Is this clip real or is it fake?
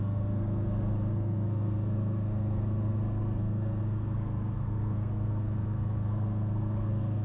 fake